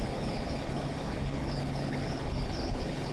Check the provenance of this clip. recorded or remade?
remade